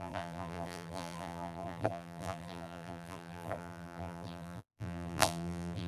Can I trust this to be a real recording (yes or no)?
no